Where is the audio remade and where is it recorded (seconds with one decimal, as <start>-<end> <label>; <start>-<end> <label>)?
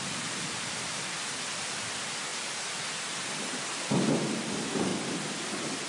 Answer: 0.0-2.3 remade; 2.3-3.3 recorded; 3.3-4.9 remade; 4.9-5.9 recorded